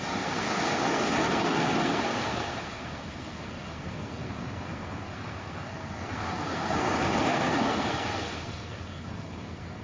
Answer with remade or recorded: remade